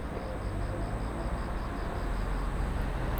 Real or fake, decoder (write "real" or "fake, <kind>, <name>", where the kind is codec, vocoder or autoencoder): real